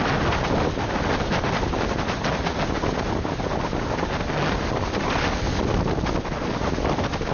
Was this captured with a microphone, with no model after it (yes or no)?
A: yes